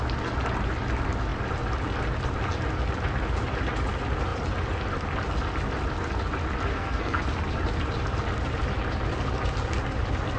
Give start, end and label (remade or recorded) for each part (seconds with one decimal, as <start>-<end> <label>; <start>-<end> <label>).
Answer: 0.0-6.7 recorded; 6.7-7.2 remade; 7.2-10.4 recorded